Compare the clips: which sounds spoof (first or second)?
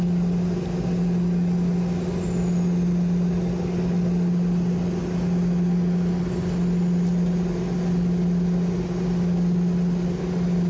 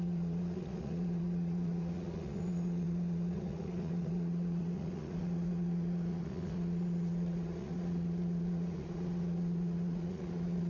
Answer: second